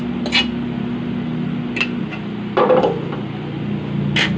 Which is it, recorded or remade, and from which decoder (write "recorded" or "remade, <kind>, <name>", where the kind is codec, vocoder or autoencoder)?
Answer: recorded